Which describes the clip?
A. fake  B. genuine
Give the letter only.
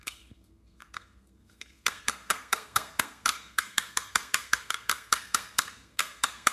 A